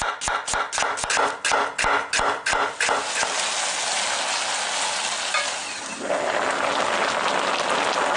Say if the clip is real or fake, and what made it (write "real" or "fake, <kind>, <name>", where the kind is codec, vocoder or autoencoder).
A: real